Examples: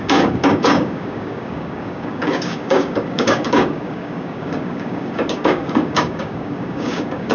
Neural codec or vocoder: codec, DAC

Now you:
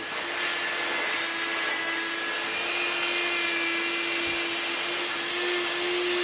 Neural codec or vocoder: none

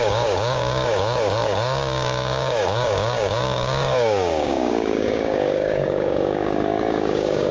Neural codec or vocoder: codec, DAC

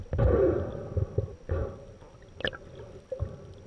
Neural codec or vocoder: none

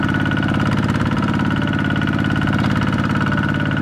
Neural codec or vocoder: none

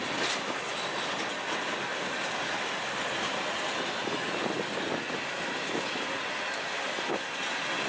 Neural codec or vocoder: none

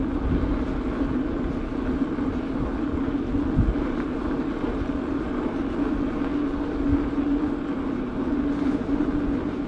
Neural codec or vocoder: none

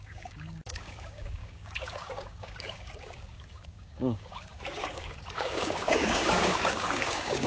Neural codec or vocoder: codec, DAC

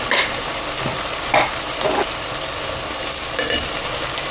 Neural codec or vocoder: none